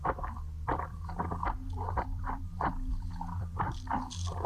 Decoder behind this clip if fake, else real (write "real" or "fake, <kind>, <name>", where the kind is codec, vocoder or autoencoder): fake, vocoder, BigVGAN v2